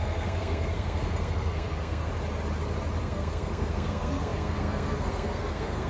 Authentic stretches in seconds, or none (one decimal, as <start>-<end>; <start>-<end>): 2.1-3.0